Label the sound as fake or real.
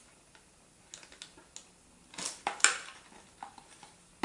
real